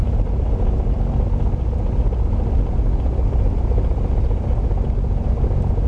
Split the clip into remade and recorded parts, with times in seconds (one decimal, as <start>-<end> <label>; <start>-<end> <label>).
0.0-5.9 recorded

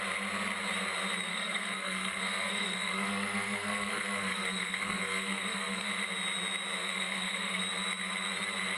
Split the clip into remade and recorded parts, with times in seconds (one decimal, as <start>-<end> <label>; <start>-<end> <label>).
0.0-1.3 recorded; 1.3-5.9 remade; 5.9-6.8 recorded; 6.8-7.6 remade; 7.6-8.8 recorded

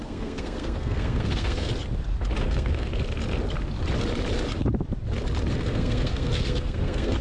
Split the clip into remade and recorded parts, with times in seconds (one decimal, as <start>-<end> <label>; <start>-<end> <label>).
0.0-1.7 remade; 1.7-2.4 recorded; 2.4-2.9 remade; 2.9-5.5 recorded; 5.5-7.2 remade

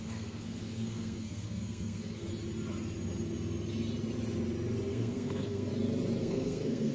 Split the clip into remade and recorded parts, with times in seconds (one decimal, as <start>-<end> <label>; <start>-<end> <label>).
0.0-2.3 remade; 2.3-4.9 recorded; 4.9-5.7 remade; 5.7-6.2 recorded; 6.2-6.9 remade

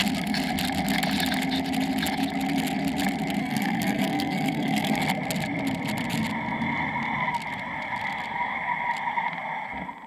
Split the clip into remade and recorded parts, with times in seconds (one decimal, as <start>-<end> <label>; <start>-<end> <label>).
0.0-3.4 recorded; 3.4-5.0 remade; 5.0-10.1 recorded

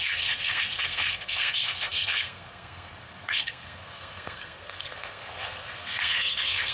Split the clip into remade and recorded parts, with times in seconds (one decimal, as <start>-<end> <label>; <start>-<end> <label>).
0.0-6.7 remade

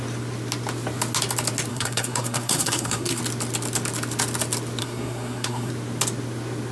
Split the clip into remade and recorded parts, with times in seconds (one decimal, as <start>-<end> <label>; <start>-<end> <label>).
0.0-1.7 recorded; 1.7-3.2 remade; 3.2-4.8 recorded; 4.8-5.7 remade; 5.7-6.7 recorded

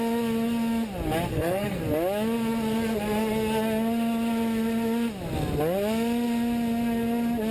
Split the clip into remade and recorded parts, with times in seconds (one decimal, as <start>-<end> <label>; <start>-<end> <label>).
0.0-1.3 recorded; 1.3-1.8 remade; 1.8-7.5 recorded